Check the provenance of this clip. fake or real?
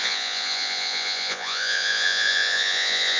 fake